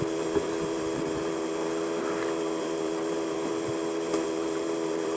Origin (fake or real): fake